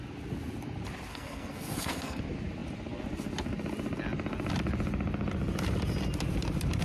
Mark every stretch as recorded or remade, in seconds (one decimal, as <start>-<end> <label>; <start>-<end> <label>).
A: 0.0-1.1 recorded; 1.1-2.2 remade; 2.2-6.8 recorded